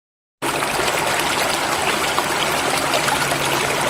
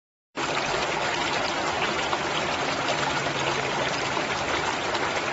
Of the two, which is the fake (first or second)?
second